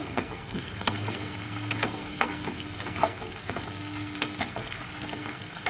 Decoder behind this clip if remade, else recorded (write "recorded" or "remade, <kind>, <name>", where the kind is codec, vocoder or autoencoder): remade, codec, SNAC